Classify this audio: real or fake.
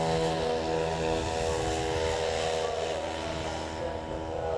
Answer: real